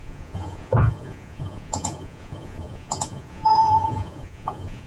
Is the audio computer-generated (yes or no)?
yes